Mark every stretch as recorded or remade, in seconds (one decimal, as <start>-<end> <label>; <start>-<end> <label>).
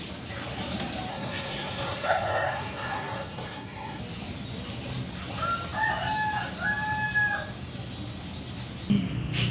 0.0-1.1 recorded; 1.1-4.0 remade; 4.0-9.5 recorded